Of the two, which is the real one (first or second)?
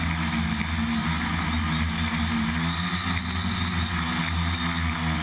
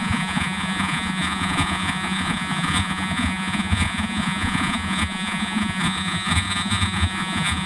first